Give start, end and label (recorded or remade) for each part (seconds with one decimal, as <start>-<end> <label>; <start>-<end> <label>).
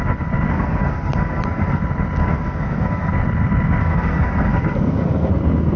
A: 0.0-0.5 recorded; 0.5-1.8 remade; 1.8-2.2 recorded; 2.2-3.1 remade; 3.1-3.8 recorded; 3.8-5.3 remade; 5.3-5.8 recorded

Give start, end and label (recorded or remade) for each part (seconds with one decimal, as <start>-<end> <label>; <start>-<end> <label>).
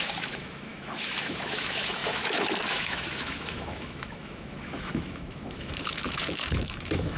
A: 0.0-7.2 remade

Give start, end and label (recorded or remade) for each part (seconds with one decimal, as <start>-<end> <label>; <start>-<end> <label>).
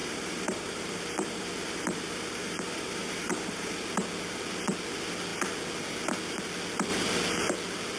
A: 0.0-3.9 remade; 3.9-8.0 recorded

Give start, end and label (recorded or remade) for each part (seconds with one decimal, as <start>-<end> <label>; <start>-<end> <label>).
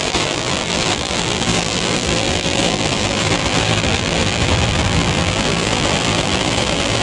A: 0.0-7.0 remade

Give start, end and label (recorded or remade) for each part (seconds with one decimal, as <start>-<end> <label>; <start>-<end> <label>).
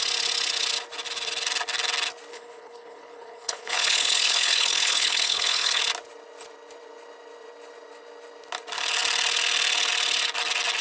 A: 0.0-2.3 recorded; 2.3-5.8 remade; 5.8-10.8 recorded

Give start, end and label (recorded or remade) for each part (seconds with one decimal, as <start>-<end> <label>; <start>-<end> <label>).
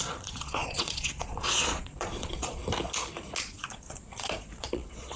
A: 0.0-2.6 remade; 2.6-3.4 recorded; 3.4-5.2 remade